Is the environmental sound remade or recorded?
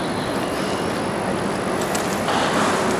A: recorded